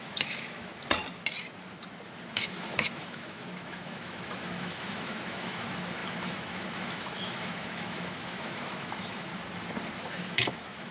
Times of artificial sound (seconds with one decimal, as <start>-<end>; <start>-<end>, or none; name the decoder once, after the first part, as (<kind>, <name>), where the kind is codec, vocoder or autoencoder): 0.0-0.7 (autoencoder, DAC-VAE); 2.3-9.3; 9.9-10.9